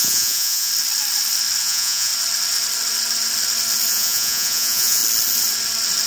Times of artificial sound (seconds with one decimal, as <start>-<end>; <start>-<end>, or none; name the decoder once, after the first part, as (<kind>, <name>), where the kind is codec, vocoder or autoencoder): 0.0-0.7 (vocoder, Vocos); 1.6-2.1; 3.9-5.0